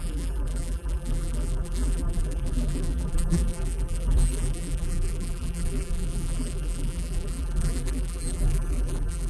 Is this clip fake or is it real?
fake